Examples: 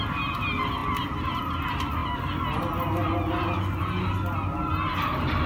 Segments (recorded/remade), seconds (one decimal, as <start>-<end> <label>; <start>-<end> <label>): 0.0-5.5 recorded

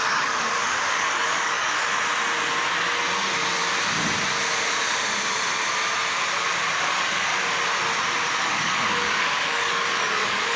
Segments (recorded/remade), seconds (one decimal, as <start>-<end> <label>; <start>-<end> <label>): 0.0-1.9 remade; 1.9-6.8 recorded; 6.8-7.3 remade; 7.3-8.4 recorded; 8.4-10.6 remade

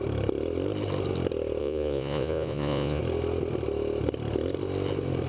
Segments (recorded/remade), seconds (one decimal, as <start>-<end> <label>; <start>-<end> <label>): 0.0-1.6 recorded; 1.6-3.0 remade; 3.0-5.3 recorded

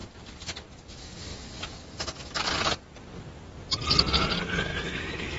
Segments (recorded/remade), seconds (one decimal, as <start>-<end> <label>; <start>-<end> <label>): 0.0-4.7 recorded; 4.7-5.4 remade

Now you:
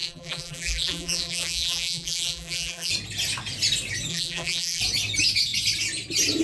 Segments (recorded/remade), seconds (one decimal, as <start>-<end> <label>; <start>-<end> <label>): 0.0-2.9 remade; 2.9-4.1 recorded; 4.1-4.8 remade; 4.8-6.4 recorded

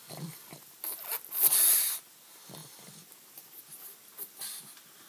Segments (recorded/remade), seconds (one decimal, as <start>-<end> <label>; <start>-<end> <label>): 0.0-5.1 recorded

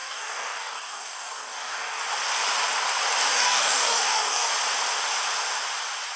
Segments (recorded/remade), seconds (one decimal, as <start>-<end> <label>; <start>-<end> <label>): 0.0-2.0 remade; 2.0-3.3 recorded; 3.3-4.5 remade; 4.5-6.2 recorded

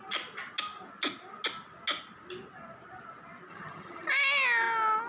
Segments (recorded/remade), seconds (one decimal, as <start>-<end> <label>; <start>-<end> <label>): 0.0-3.5 recorded; 3.5-4.1 remade; 4.1-5.1 recorded